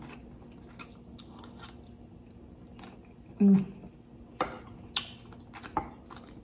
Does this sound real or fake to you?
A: real